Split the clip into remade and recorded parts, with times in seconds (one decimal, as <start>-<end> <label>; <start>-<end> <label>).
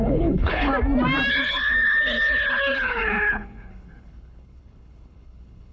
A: 0.0-0.7 remade; 0.7-1.3 recorded; 1.3-5.7 remade